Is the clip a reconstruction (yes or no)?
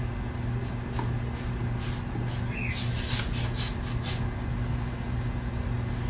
no